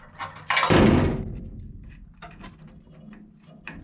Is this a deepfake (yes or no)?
no